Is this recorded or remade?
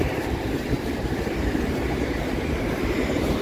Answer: remade